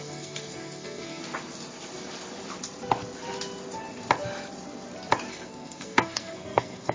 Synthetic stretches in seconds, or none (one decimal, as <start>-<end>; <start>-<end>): 0.0-1.2; 5.3-6.9

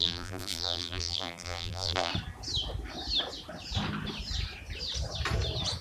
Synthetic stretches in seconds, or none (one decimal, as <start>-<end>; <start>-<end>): 0.0-2.1

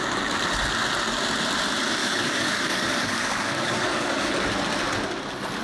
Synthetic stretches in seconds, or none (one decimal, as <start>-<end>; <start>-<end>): 2.0-4.3

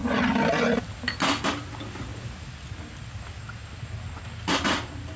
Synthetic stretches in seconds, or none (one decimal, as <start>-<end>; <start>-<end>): none

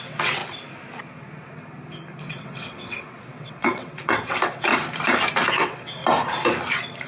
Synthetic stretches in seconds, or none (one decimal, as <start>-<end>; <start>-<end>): 0.0-0.4; 2.2-4.7; 5.5-6.0